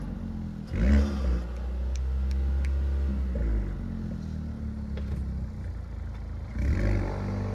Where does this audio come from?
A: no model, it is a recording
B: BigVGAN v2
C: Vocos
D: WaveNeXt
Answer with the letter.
A